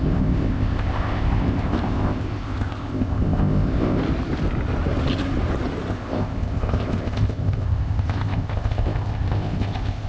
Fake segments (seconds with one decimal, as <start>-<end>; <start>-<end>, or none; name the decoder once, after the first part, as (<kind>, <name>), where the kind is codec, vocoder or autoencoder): 0.0-4.0 (codec, ZipCodec); 5.9-10.1